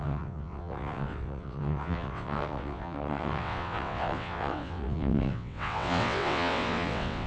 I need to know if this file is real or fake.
fake